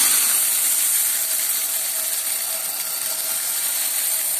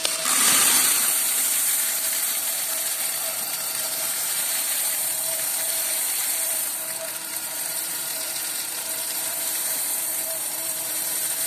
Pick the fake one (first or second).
second